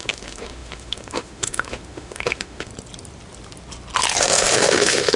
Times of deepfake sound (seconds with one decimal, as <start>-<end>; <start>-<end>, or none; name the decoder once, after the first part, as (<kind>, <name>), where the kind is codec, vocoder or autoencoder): 0.0-2.7 (autoencoder, DAC-VAE); 4.2-5.2